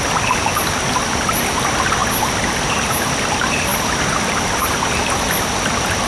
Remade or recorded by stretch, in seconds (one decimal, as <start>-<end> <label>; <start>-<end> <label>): 0.0-6.1 recorded

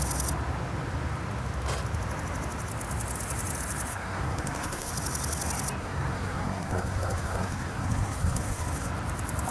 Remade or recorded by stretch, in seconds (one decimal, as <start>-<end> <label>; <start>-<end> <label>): 0.0-3.9 recorded; 3.9-4.9 remade; 4.9-5.8 recorded; 5.8-8.9 remade; 8.9-9.5 recorded

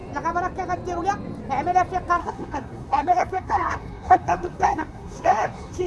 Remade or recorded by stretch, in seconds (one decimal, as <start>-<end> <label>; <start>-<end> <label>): 0.0-2.2 recorded; 2.2-5.9 remade

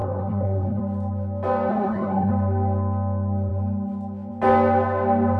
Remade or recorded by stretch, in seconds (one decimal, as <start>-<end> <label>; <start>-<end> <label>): 0.0-0.8 remade; 0.8-1.7 recorded; 1.7-2.3 remade; 2.3-5.4 recorded